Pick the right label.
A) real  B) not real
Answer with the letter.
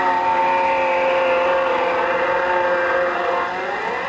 A